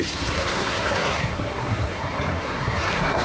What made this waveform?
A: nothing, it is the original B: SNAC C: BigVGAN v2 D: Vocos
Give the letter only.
B